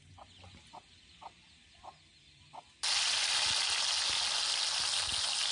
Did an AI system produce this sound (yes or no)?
no